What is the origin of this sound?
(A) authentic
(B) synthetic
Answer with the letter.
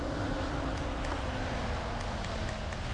A